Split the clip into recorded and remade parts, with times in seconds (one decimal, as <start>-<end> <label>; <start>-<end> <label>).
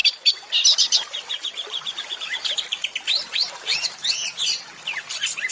0.0-5.5 recorded